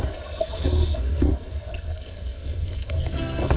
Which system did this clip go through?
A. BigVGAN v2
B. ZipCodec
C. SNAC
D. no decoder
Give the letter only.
C